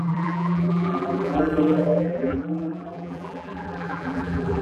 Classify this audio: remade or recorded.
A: remade